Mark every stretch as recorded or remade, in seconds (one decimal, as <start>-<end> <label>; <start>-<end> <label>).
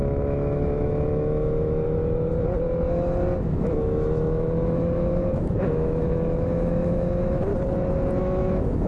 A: 0.0-2.3 remade; 2.3-3.4 recorded; 3.4-7.5 remade; 7.5-8.2 recorded; 8.2-8.9 remade